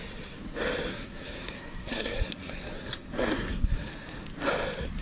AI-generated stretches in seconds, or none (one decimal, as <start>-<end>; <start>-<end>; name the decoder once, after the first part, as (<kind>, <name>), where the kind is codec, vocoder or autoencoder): 0.9-3.9 (codec, SNAC)